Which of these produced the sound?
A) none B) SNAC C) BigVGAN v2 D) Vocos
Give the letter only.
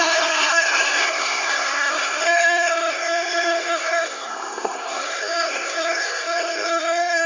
B